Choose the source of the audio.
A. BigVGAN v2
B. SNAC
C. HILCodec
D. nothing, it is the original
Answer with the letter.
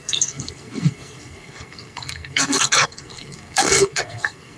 B